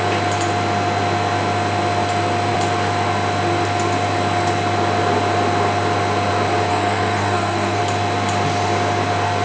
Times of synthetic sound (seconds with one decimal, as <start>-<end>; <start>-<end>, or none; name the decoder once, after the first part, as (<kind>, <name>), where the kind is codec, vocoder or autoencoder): 6.7-7.8 (codec, SNAC)